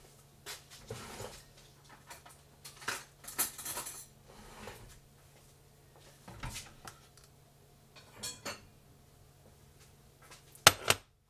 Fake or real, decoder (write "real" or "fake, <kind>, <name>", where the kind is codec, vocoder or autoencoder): real